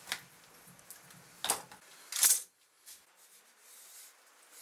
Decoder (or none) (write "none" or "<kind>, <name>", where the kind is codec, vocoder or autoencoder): none